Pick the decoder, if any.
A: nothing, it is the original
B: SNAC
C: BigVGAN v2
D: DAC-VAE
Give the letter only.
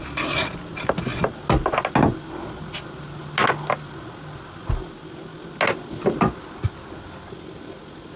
A